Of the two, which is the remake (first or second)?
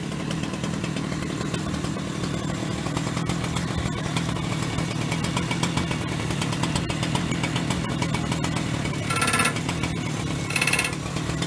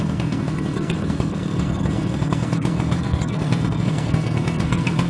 second